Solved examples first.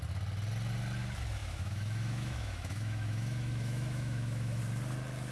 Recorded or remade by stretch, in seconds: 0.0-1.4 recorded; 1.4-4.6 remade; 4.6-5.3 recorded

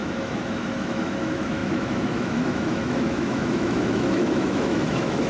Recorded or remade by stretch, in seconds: 0.0-5.3 remade

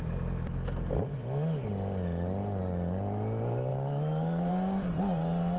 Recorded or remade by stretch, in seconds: 0.0-1.1 recorded; 1.1-1.7 remade; 1.7-3.7 recorded; 3.7-4.5 remade; 4.5-5.6 recorded

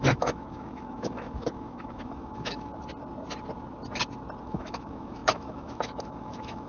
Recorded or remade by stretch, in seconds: 0.0-2.7 remade; 2.7-4.4 recorded; 4.4-6.7 remade

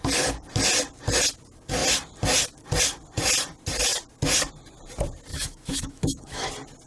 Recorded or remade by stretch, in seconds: 0.0-5.3 recorded; 5.3-6.5 remade; 6.5-6.9 recorded

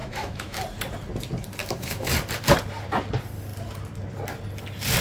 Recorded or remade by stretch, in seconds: 0.0-0.6 remade; 0.6-1.6 recorded; 1.6-2.1 remade; 2.1-5.0 recorded

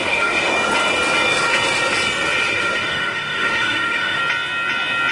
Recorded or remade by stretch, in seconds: 0.0-0.5 remade; 0.5-2.4 recorded; 2.4-4.2 remade; 4.2-5.1 recorded